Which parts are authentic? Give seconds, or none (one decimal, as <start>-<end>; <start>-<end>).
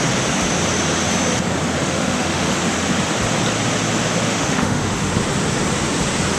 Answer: 0.0-1.8; 2.5-4.2; 5.1-6.4